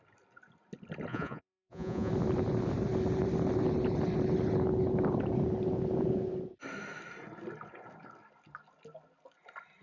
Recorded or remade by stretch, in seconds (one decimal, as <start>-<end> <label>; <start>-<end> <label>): 0.0-1.1 recorded; 1.1-2.1 remade; 2.1-9.8 recorded